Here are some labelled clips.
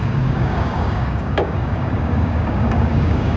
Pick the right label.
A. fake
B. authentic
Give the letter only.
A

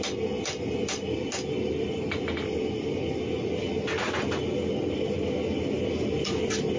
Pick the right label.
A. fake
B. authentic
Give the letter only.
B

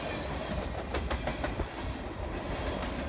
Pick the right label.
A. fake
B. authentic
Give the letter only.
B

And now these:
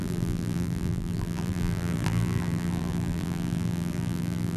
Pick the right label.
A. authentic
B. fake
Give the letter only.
B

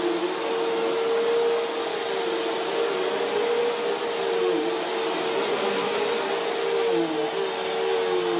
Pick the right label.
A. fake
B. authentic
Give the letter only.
B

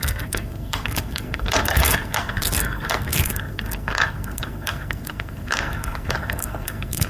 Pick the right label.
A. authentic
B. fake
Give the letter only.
B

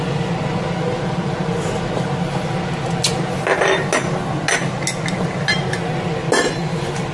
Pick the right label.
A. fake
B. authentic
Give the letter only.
B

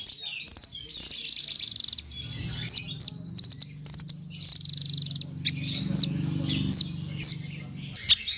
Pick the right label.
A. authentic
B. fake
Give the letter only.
A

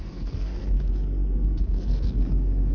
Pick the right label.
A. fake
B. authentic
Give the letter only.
A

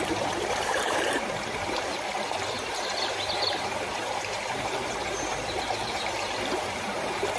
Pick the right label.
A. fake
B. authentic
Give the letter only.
A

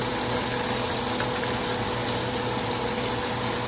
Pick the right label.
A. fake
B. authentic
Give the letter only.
B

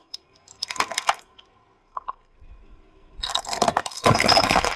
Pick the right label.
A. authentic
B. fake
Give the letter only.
B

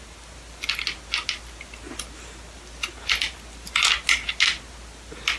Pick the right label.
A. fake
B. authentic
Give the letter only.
B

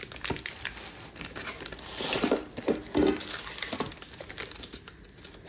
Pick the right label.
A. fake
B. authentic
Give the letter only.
B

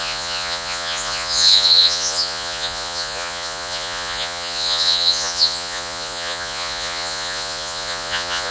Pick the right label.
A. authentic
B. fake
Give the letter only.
B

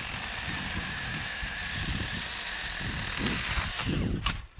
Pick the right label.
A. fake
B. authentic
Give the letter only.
B